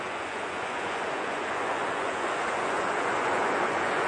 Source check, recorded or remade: remade